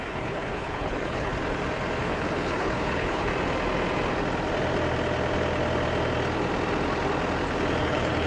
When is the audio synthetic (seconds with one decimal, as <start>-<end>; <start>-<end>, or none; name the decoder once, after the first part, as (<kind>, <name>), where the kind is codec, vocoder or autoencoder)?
0.0-1.3 (codec, HILCodec); 2.0-3.3; 7.8-8.3